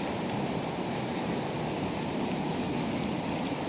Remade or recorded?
recorded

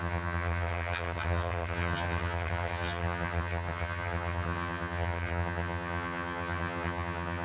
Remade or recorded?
remade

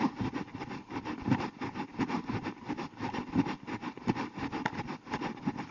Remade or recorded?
recorded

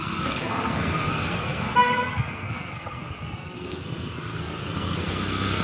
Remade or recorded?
remade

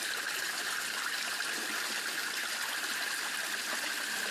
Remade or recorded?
recorded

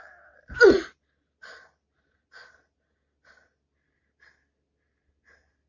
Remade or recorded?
recorded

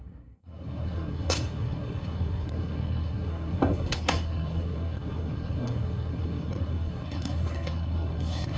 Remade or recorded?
remade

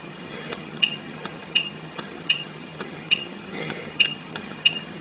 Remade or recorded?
remade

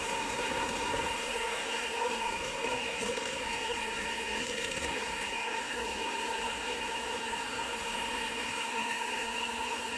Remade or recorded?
remade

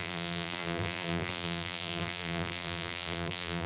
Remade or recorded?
remade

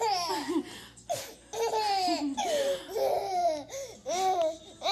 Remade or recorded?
recorded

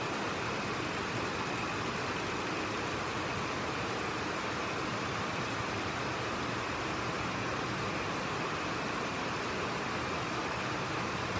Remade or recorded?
recorded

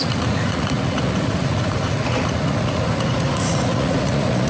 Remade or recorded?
remade